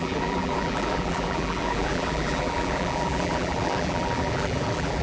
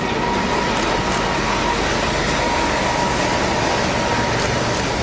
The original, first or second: second